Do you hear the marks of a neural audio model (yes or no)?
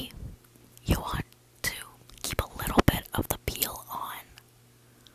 no